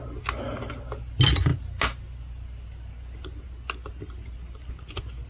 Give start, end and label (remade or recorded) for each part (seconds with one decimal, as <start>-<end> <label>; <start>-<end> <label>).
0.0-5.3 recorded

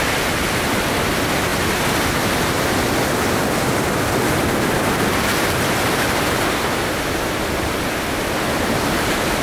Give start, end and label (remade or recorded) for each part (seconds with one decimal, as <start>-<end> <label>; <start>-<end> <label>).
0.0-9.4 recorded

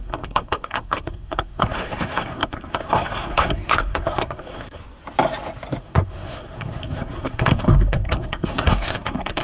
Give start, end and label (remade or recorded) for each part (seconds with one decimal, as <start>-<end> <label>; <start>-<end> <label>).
0.0-4.8 remade; 4.8-5.8 recorded; 5.8-9.4 remade

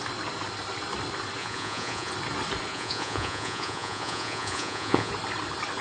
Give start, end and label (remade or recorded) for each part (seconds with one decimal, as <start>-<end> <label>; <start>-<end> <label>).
0.0-1.4 recorded; 1.4-2.1 remade; 2.1-2.7 recorded; 2.7-5.1 remade; 5.1-5.8 recorded